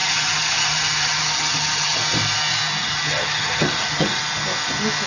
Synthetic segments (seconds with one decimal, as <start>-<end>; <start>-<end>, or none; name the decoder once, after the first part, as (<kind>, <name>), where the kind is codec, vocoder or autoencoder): 0.0-2.0 (vocoder, HiFi-GAN); 2.8-4.2